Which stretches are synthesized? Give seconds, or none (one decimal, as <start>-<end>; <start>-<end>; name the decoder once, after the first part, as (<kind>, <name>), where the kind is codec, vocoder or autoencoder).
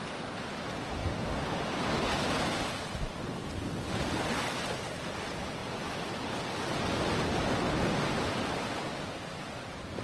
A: none